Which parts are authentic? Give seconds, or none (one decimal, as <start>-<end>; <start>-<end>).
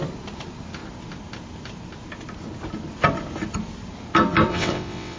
0.0-4.5